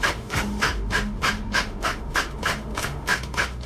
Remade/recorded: remade